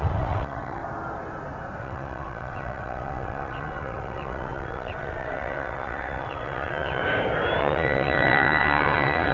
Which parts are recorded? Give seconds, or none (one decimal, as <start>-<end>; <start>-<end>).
0.8-1.8; 7.0-7.6